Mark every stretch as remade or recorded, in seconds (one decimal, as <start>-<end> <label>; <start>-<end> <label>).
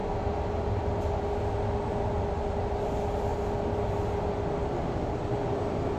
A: 0.0-6.0 recorded